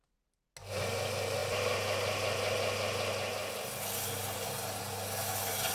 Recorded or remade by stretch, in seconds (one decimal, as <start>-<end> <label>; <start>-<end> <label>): 0.0-5.7 recorded